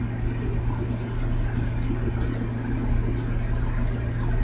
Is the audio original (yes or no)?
yes